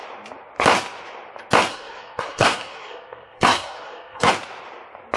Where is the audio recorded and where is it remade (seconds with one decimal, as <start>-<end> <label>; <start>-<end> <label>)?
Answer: 0.0-1.7 recorded; 1.7-4.3 remade; 4.3-5.2 recorded